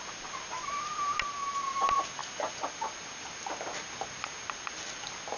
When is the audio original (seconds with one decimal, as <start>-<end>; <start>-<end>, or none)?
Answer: 0.0-5.4